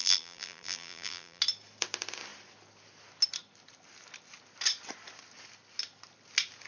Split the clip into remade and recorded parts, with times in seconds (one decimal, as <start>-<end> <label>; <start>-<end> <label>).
0.0-1.4 remade; 1.4-6.7 recorded